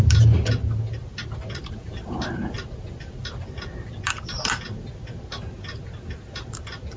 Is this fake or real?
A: real